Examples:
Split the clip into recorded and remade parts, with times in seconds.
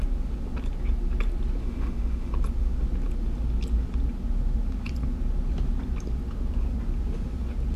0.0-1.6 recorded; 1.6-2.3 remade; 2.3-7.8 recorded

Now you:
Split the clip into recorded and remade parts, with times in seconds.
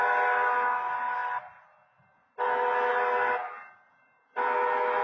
0.0-5.0 recorded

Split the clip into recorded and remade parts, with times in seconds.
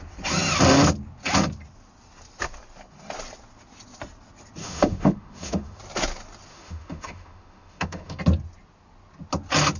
0.0-4.6 recorded; 4.6-5.8 remade; 5.8-6.5 recorded; 6.5-8.2 remade; 8.2-9.8 recorded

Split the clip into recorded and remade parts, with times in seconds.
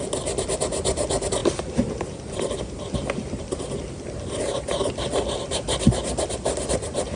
0.0-7.2 recorded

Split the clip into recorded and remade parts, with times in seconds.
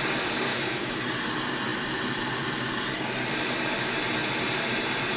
0.0-0.5 recorded; 0.5-1.0 remade; 1.0-5.2 recorded